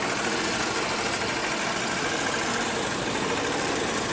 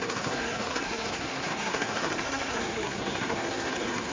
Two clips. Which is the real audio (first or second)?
first